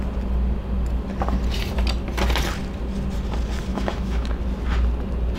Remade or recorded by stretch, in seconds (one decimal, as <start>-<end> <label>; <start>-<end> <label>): 0.0-3.7 recorded; 3.7-4.3 remade; 4.3-5.4 recorded